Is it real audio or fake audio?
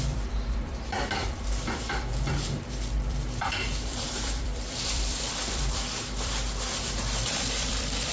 fake